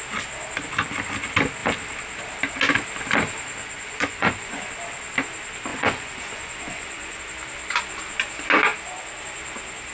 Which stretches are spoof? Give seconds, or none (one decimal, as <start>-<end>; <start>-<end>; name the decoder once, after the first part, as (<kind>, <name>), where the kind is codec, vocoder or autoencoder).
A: 3.6-4.7 (vocoder, Vocos); 5.7-7.2